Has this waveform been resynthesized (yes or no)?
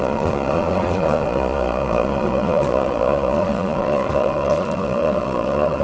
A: yes